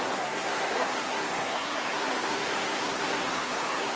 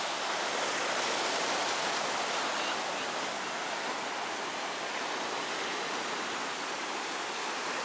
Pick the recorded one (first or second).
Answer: second